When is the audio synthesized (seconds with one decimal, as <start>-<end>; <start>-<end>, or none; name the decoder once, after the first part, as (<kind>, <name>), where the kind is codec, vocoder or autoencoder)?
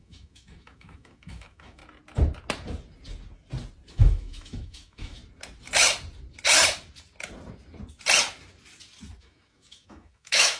0.0-1.8 (autoencoder, DAC-VAE); 3.9-5.2; 9.2-10.6